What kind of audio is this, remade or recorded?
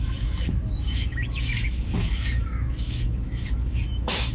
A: remade